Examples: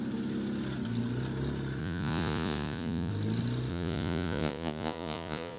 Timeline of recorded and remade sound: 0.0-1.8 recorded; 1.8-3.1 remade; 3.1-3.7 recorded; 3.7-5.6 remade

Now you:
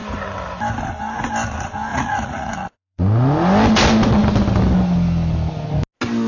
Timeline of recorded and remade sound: 0.0-1.9 recorded; 1.9-3.0 remade; 3.0-6.3 recorded

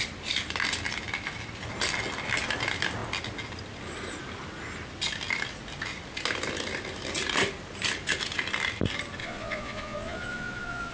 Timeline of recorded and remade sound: 0.0-9.2 recorded; 9.2-10.9 remade

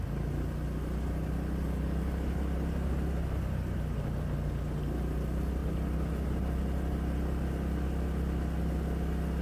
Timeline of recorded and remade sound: 0.0-9.4 recorded

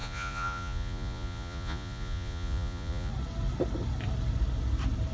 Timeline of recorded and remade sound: 0.0-3.1 remade; 3.1-5.1 recorded

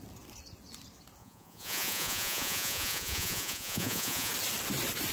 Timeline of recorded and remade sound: 0.0-1.2 recorded; 1.2-4.3 remade; 4.3-5.1 recorded